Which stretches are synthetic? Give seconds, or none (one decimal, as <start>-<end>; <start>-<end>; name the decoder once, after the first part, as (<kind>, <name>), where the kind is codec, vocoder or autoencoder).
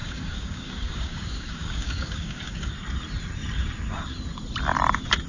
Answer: 0.0-2.7 (codec, DAC)